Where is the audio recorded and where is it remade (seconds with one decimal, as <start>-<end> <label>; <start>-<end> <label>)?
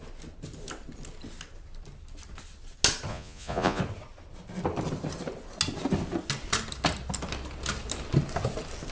0.0-3.1 recorded; 3.1-3.8 remade; 3.8-8.9 recorded